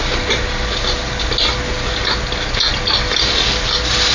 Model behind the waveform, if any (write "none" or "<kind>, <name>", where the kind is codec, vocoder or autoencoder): none